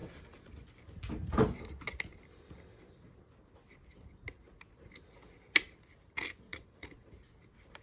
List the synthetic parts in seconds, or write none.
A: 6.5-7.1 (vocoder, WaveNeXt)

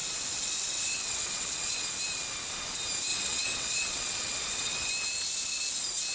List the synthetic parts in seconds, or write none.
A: 0.0-1.9 (vocoder, WaveNeXt); 3.1-4.9

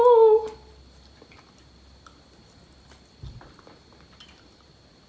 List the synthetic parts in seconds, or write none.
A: none

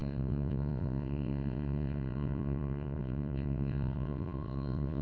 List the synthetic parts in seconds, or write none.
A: 0.0-5.0 (vocoder, WaveNeXt)

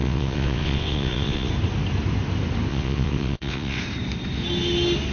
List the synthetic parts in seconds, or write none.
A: 0.0-1.5 (vocoder, WaveNeXt); 2.7-3.8

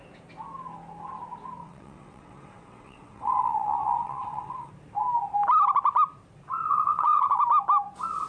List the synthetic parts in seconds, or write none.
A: 1.6-4.7 (vocoder, WaveNeXt); 6.7-7.4

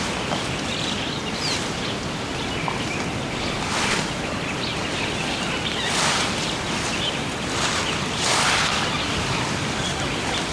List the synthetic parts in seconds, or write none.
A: none